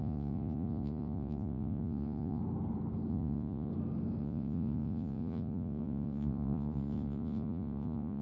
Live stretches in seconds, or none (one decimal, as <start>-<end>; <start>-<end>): 2.4-3.1; 3.7-4.2